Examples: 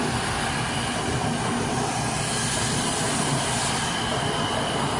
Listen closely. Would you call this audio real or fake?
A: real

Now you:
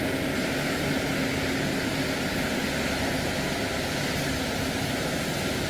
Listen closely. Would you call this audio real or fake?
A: real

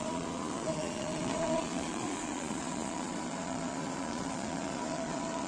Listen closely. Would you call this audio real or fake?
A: fake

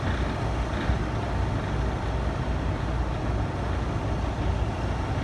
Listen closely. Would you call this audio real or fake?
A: real